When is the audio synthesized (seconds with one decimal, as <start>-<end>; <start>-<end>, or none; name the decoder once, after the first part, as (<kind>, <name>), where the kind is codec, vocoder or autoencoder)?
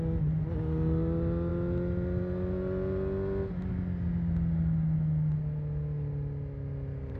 none